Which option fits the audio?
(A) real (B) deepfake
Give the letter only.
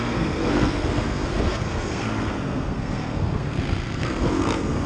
B